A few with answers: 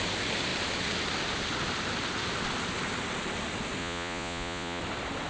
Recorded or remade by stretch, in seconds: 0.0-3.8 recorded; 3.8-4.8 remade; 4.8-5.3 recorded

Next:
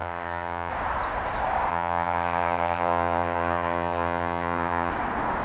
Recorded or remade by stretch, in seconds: 0.0-0.7 remade; 0.7-1.7 recorded; 1.7-4.9 remade; 4.9-5.4 recorded

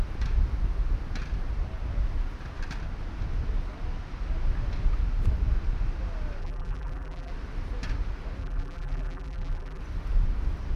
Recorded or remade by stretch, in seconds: 0.0-6.4 recorded; 6.4-7.3 remade; 7.3-8.4 recorded; 8.4-9.8 remade; 9.8-10.8 recorded

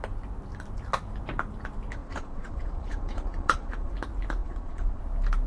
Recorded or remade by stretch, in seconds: 0.0-2.0 recorded; 2.0-3.9 remade; 3.9-4.4 recorded; 4.4-5.0 remade; 5.0-5.5 recorded

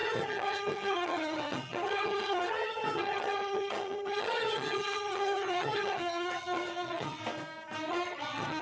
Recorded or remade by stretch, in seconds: 0.0-7.2 remade; 7.2-7.9 recorded; 7.9-8.6 remade